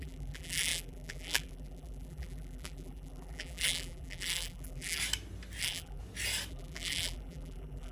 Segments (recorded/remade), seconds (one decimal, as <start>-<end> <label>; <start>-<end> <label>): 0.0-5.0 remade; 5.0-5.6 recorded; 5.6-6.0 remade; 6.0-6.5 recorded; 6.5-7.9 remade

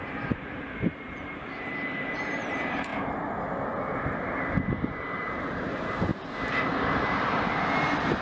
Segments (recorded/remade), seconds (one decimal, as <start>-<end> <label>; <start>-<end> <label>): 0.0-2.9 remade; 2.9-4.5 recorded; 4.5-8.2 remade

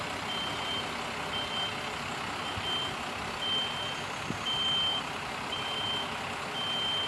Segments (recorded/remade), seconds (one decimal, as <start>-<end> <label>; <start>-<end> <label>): 0.0-4.9 recorded; 4.9-5.9 remade; 5.9-7.1 recorded

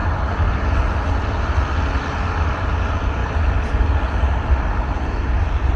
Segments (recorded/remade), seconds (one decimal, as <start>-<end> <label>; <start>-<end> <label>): 0.0-2.8 recorded; 2.8-3.2 remade; 3.2-4.5 recorded; 4.5-5.8 remade